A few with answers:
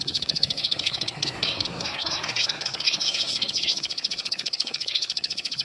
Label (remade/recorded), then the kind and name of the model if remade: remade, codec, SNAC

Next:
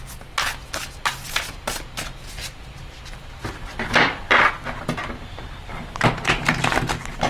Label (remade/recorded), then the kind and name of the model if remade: recorded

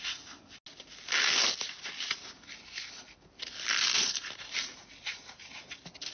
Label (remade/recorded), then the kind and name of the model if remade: recorded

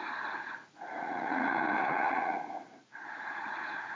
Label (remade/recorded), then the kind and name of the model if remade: remade, vocoder, Vocos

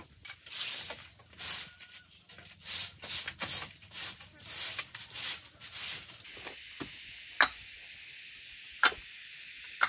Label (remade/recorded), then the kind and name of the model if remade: recorded